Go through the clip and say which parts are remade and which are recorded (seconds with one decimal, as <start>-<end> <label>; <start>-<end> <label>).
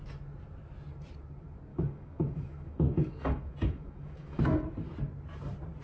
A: 0.0-1.7 recorded; 1.7-4.4 remade; 4.4-5.8 recorded